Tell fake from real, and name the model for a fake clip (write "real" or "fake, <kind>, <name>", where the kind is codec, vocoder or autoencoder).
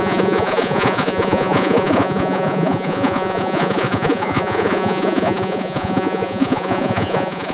fake, vocoder, Vocos